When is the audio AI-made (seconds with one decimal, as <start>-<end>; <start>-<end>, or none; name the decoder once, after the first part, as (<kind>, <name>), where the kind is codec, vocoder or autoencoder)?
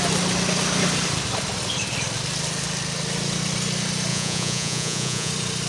4.1-5.3 (vocoder, Vocos)